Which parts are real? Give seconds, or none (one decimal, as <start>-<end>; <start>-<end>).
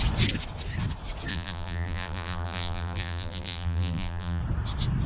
0.0-1.3; 4.4-5.1